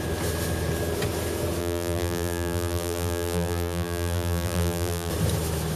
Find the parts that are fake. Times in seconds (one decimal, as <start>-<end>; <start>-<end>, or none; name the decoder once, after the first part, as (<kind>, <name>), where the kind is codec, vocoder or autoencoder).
1.6-5.1 (vocoder, BigVGAN v2)